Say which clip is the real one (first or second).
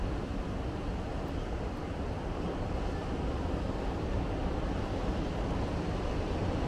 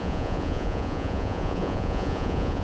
first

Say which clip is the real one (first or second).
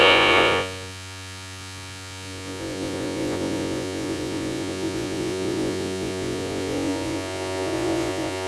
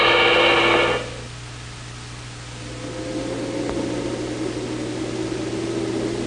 second